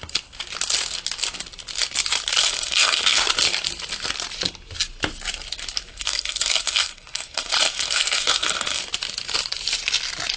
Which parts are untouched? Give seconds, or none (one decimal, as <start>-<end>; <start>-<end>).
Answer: 0.0-2.4; 3.2-5.9; 8.8-10.4